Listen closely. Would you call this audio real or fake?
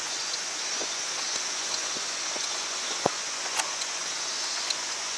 fake